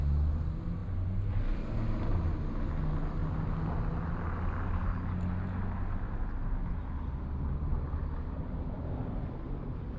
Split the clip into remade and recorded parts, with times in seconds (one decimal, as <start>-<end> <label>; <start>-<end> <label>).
0.0-10.0 recorded